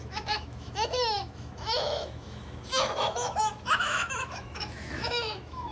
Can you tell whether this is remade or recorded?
remade